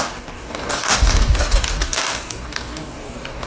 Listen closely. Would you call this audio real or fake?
fake